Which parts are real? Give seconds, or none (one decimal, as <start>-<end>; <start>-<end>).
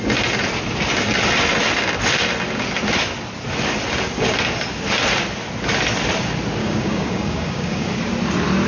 0.0-6.6; 7.9-8.7